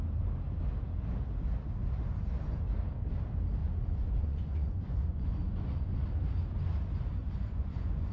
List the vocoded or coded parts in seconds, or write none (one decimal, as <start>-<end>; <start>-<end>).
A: 3.6-6.1; 7.2-8.1